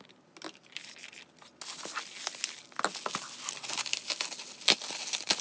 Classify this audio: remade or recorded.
recorded